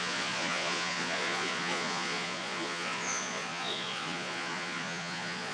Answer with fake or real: fake